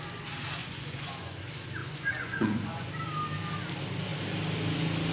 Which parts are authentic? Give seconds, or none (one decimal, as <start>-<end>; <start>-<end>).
0.0-0.6; 1.4-1.8; 2.9-5.1